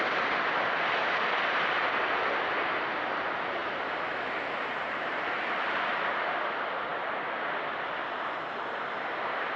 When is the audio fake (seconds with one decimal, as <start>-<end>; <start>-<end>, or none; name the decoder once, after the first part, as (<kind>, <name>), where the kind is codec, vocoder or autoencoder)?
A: 3.6-6.4 (vocoder, BigVGAN v2)